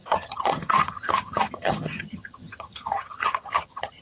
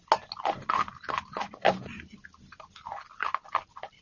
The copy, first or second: first